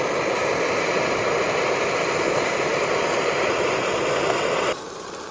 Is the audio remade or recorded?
recorded